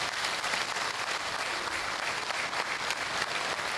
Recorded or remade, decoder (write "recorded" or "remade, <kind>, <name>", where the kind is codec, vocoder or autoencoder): recorded